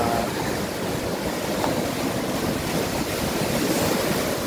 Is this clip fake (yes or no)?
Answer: no